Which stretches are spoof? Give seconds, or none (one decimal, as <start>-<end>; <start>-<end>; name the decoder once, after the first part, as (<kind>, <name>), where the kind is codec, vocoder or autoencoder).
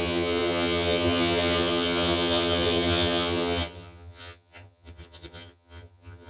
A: 0.0-6.3 (vocoder, HiFi-GAN)